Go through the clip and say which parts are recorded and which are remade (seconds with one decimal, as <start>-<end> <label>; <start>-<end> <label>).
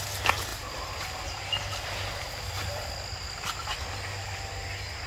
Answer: 0.0-5.1 recorded